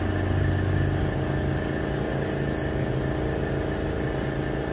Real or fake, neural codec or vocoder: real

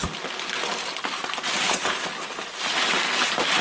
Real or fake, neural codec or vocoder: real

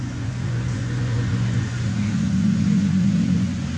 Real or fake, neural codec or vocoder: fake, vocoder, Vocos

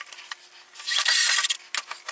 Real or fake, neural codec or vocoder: real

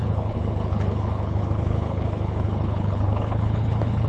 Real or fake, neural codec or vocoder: fake, codec, HILCodec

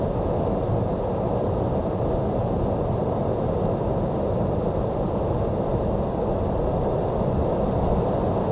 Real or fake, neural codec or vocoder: real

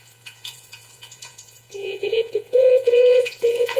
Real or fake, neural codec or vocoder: fake, vocoder, Vocos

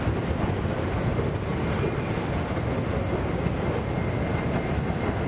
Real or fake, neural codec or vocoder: real